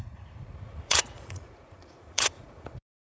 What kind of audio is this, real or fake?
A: fake